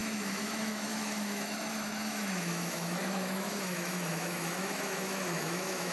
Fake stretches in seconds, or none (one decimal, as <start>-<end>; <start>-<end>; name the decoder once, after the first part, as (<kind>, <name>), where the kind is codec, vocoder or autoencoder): 0.0-5.9 (autoencoder, DAC-VAE)

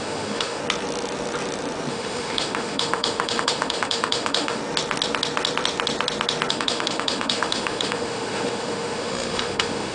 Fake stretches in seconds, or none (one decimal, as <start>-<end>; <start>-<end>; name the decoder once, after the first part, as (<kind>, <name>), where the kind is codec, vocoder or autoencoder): 0.0-0.6 (autoencoder, DAC-VAE); 1.9-4.6; 6.5-9.9

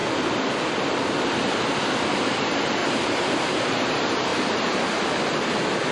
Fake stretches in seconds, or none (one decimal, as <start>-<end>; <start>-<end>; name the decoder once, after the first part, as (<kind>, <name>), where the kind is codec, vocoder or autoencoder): 2.8-3.7 (vocoder, BigVGAN v2); 4.3-5.0

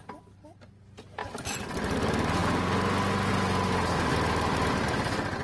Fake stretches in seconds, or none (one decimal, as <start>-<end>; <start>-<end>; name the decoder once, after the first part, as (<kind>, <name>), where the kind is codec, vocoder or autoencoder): none

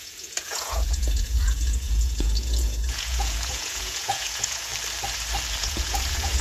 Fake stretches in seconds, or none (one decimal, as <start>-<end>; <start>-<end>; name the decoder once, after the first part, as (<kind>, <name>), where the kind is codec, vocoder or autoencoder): 0.0-4.7 (vocoder, Vocos); 5.6-6.4

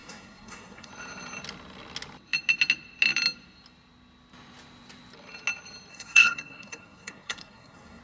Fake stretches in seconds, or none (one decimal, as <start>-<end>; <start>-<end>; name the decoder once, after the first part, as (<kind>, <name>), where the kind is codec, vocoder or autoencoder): 0.0-0.9 (codec, SNAC); 5.9-8.0

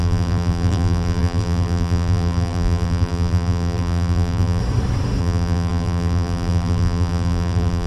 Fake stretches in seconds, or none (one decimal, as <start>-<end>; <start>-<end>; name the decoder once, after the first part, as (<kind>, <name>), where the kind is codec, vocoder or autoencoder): 0.0-4.6 (vocoder, BigVGAN v2); 5.2-7.9